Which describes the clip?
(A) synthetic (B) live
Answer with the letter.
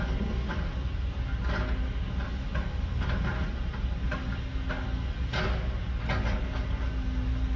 B